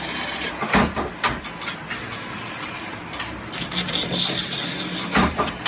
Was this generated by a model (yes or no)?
no